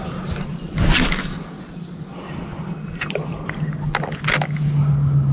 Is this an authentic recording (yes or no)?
yes